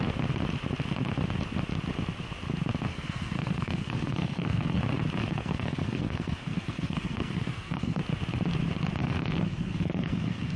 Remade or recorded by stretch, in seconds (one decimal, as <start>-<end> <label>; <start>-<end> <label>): 0.0-2.9 recorded; 2.9-4.8 remade; 4.8-5.2 recorded; 5.2-8.0 remade; 8.0-9.0 recorded; 9.0-10.6 remade